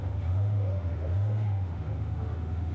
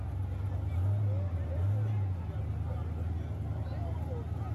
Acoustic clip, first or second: second